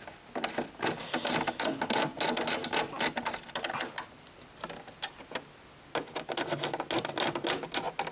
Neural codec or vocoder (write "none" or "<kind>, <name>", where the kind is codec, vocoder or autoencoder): none